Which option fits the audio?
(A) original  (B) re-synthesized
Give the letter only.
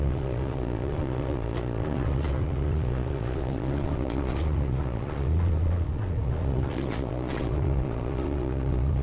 B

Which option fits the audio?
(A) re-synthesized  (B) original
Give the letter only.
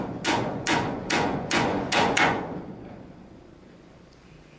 A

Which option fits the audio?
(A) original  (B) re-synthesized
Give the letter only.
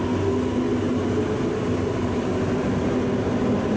A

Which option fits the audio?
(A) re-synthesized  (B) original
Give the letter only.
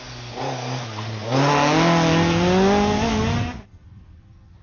B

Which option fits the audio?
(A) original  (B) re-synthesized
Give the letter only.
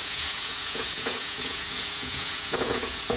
B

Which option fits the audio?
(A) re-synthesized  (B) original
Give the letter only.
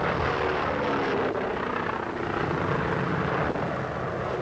B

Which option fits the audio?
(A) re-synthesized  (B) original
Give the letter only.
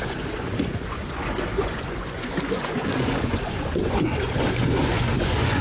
A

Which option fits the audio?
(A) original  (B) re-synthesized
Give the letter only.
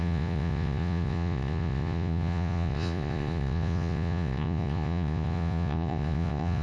B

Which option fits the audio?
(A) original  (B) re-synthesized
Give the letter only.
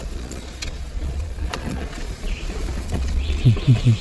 B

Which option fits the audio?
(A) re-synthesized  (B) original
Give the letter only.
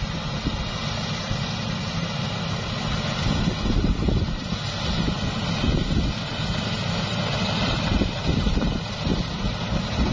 B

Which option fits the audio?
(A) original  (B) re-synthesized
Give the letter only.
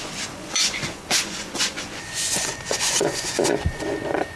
B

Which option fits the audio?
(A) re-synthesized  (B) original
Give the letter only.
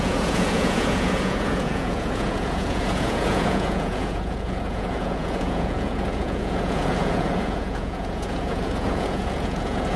A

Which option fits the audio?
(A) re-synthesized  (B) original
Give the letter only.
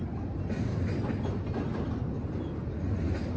B